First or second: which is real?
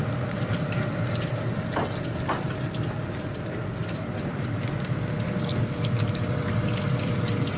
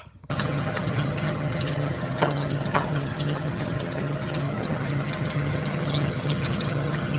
first